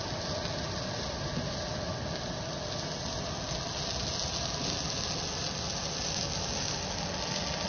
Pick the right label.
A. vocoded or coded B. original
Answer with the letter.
B